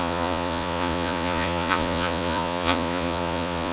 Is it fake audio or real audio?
fake